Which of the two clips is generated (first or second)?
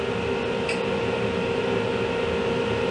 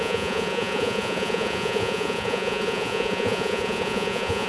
second